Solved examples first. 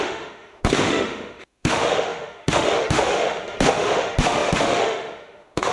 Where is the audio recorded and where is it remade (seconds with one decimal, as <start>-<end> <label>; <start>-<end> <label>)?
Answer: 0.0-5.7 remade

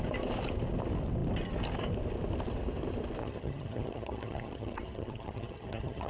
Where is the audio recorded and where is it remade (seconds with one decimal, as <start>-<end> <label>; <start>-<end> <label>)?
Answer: 0.0-3.2 recorded; 3.2-6.1 remade

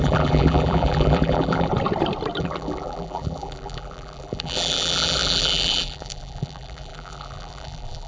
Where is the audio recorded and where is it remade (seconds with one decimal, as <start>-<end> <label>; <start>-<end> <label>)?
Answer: 0.0-1.7 remade; 1.7-2.4 recorded; 2.4-8.1 remade